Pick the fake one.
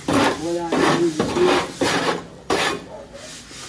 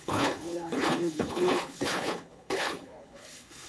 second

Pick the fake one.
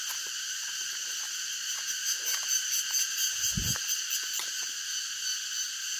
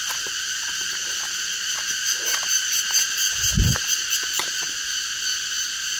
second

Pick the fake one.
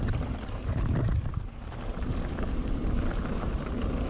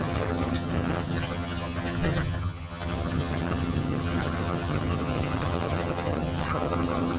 second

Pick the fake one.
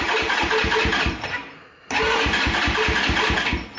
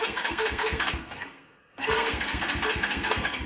second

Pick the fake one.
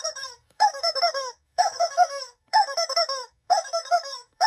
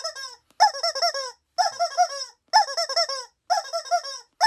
first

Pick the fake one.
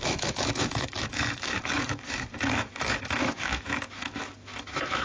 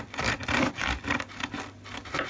first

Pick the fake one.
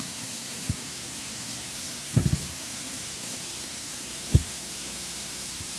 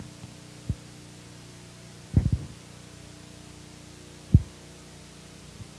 first